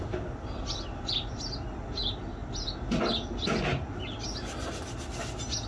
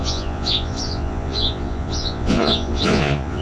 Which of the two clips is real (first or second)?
first